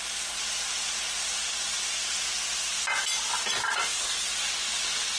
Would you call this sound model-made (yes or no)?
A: no